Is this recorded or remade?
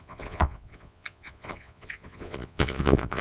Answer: remade